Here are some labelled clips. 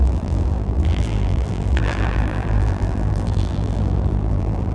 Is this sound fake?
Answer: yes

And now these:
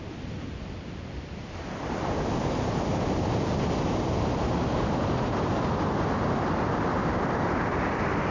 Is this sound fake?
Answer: no